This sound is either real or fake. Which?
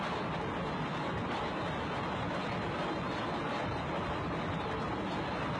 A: real